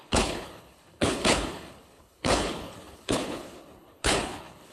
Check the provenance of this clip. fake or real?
fake